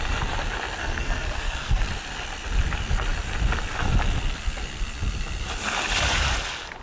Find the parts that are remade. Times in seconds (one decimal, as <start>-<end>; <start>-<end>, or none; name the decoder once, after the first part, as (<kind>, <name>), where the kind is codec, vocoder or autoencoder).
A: 0.8-1.9 (codec, SNAC)